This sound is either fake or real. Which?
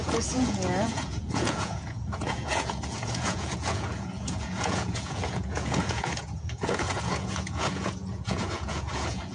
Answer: fake